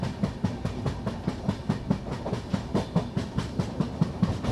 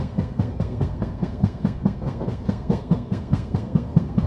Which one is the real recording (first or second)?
first